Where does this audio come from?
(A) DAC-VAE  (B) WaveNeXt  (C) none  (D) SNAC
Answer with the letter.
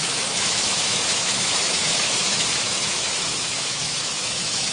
A